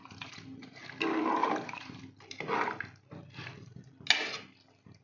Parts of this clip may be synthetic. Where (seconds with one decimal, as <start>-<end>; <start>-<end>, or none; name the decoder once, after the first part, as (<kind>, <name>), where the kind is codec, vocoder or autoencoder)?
0.0-0.8 (vocoder, BigVGAN v2); 1.4-2.0